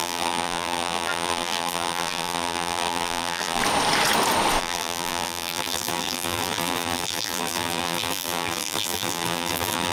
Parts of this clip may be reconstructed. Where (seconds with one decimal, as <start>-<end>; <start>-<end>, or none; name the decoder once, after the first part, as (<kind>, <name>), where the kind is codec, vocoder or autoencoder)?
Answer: 0.0-3.6 (vocoder, BigVGAN v2); 4.6-9.9